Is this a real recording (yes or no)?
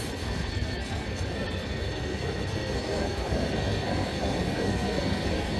no